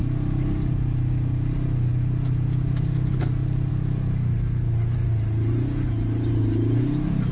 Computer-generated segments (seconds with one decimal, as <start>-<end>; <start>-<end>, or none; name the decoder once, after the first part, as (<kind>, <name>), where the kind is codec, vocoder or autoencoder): none